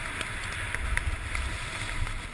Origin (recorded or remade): recorded